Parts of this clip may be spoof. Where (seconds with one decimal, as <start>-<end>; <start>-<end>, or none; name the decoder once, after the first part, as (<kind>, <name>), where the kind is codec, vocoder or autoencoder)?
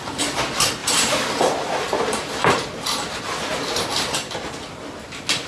0.8-3.2 (vocoder, BigVGAN v2); 3.9-4.8